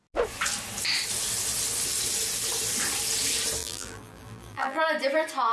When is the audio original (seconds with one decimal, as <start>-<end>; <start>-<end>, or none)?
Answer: 0.0-3.6; 4.8-5.5